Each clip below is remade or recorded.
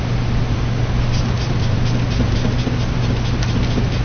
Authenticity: recorded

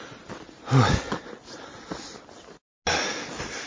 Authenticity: recorded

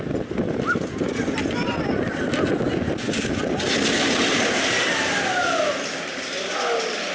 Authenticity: recorded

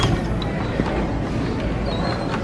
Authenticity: recorded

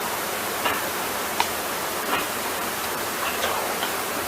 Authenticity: remade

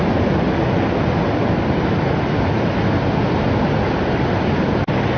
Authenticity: recorded